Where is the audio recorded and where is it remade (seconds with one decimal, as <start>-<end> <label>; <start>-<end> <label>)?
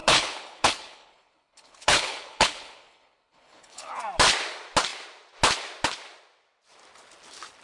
0.0-4.0 remade; 4.0-7.6 recorded